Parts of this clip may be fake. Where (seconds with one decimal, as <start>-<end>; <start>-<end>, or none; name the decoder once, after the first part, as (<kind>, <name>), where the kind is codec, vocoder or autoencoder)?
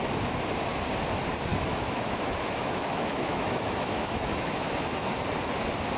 1.5-5.1 (autoencoder, DAC-VAE)